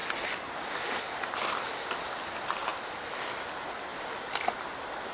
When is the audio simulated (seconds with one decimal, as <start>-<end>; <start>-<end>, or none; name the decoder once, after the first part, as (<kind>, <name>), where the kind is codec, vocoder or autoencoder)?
none